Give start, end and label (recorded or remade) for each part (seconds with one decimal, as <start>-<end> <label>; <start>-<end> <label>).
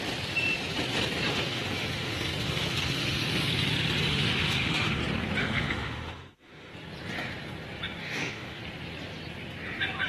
0.0-1.3 recorded; 1.3-3.5 remade; 3.5-4.1 recorded; 4.1-5.0 remade; 5.0-5.4 recorded; 5.4-6.7 remade; 6.7-8.0 recorded; 8.0-8.6 remade; 8.6-10.1 recorded